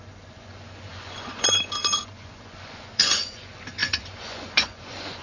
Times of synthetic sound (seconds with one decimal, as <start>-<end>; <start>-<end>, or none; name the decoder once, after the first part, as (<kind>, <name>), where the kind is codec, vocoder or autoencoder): 0.0-5.2 (vocoder, Vocos)